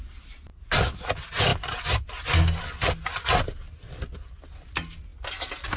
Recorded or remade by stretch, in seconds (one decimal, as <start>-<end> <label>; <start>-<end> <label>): 0.0-5.8 recorded